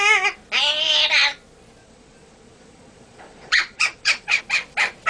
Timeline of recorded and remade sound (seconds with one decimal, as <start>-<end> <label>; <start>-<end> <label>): 0.0-1.8 recorded; 1.8-4.4 remade; 4.4-5.1 recorded